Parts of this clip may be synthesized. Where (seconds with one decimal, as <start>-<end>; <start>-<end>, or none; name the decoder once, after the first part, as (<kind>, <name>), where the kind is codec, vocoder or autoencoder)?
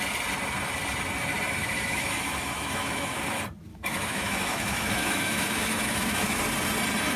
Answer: 1.6-3.2 (autoencoder, DAC-VAE); 3.7-6.4